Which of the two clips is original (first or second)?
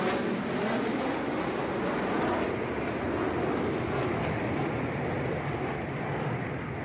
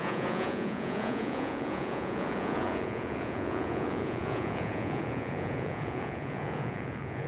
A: first